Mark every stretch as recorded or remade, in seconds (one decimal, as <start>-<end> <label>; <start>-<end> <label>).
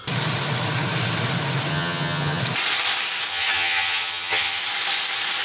0.0-1.7 recorded; 1.7-2.4 remade; 2.4-3.3 recorded; 3.3-4.6 remade; 4.6-5.4 recorded